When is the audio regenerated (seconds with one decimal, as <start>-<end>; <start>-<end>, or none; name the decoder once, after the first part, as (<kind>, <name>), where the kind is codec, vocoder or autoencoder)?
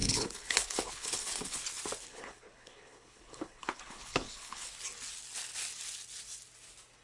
0.0-1.6 (codec, HILCodec); 2.1-4.7